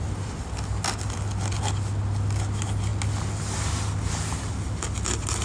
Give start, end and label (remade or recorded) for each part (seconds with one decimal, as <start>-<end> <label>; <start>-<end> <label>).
0.0-5.4 recorded